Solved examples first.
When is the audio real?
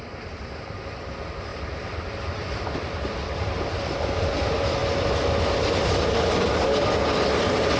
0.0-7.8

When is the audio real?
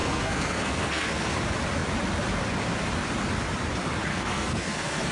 1.3-4.1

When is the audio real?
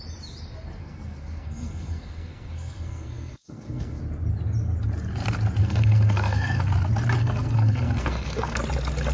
0.0-0.8; 4.0-5.6; 6.7-7.2; 8.6-9.1